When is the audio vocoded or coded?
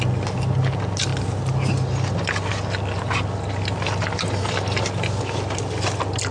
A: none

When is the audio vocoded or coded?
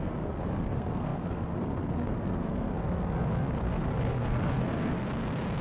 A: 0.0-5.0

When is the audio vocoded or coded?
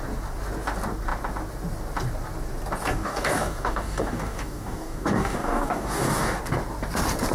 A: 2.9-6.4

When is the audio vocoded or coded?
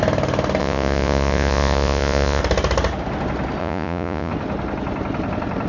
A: 0.6-2.4; 3.6-4.3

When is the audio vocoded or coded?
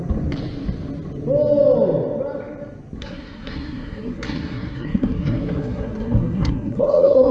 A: 3.0-7.3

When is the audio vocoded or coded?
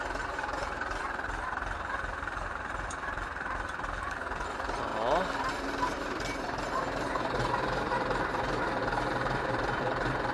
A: 0.0-4.9; 5.5-10.3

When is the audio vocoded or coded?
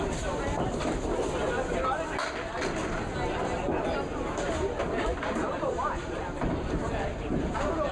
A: 5.4-6.9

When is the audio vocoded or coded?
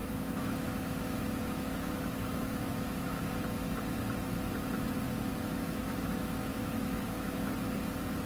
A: 0.0-3.3; 5.3-7.5